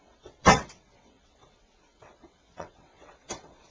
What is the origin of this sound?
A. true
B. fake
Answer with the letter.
B